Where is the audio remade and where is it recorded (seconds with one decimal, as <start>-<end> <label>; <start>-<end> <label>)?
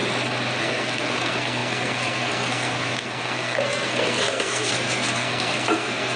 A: 0.0-0.6 recorded; 0.6-6.2 remade